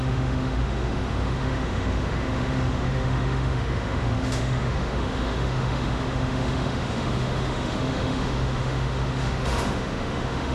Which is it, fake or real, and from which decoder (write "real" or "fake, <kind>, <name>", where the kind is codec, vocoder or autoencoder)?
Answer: fake, autoencoder, DAC-VAE